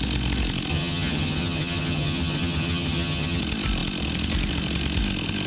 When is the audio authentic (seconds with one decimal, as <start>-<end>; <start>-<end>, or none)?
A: 0.0-0.7; 3.4-5.5

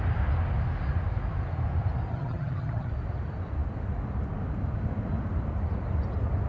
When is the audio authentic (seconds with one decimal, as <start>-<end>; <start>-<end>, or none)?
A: 0.0-2.1; 2.9-6.5